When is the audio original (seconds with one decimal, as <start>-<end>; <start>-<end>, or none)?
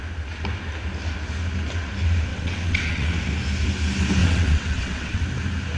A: 0.0-2.3; 3.2-4.2; 5.2-5.8